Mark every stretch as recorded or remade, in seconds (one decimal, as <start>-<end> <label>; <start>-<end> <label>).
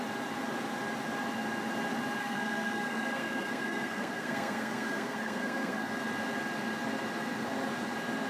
0.0-2.2 recorded; 2.2-5.9 remade; 5.9-8.3 recorded